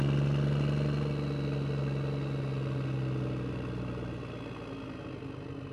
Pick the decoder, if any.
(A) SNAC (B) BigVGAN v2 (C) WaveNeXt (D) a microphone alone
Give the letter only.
D